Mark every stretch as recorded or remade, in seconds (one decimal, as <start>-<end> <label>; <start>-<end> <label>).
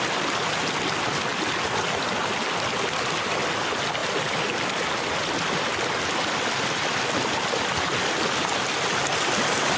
0.0-9.8 recorded